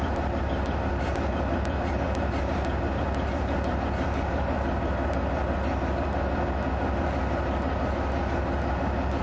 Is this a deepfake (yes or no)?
no